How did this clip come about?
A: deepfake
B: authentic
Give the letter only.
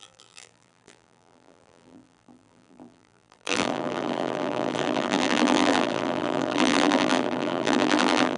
A